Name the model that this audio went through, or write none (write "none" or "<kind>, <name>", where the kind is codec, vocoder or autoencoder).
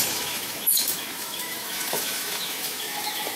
autoencoder, DAC-VAE